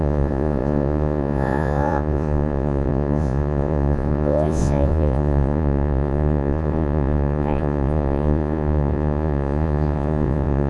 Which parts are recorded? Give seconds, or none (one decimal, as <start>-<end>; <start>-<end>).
none